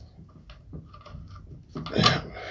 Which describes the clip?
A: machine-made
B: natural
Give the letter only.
B